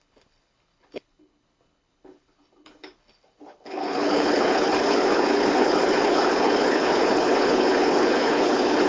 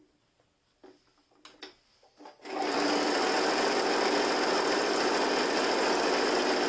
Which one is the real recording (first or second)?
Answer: second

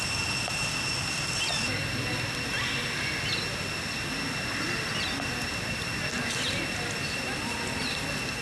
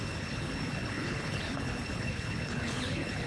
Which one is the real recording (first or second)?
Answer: first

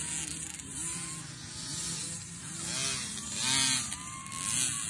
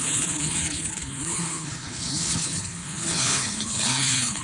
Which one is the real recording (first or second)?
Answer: first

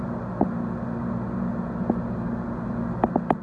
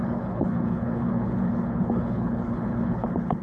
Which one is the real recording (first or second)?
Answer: first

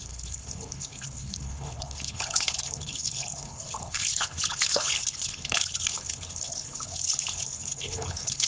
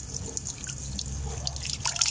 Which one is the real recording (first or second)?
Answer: second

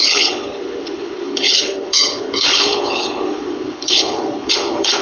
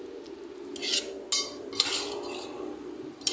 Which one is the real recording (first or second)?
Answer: second